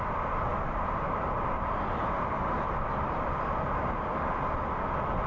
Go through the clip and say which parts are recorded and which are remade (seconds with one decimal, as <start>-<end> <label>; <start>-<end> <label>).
0.0-0.5 recorded; 0.5-3.7 remade; 3.7-5.3 recorded